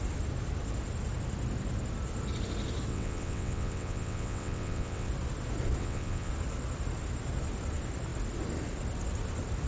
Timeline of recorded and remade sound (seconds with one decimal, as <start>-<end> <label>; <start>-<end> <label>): 0.0-2.9 recorded; 2.9-5.1 remade; 5.1-5.8 recorded; 5.8-6.3 remade; 6.3-9.7 recorded